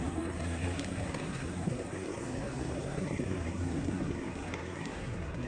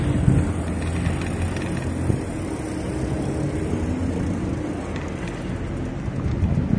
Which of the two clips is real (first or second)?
second